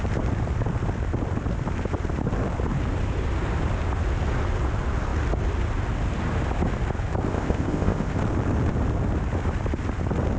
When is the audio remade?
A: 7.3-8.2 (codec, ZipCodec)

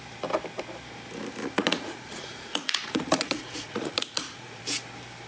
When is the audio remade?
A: 1.4-4.6 (vocoder, Vocos)

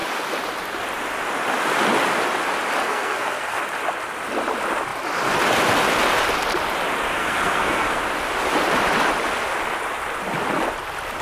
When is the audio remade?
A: 2.8-3.6 (codec, SNAC); 7.2-8.0

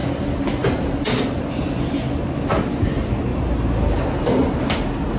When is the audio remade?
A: none

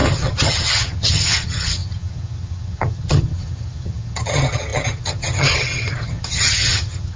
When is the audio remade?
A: 0.0-7.2 (vocoder, HiFi-GAN)